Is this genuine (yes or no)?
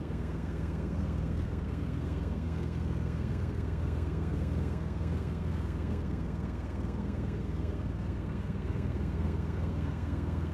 no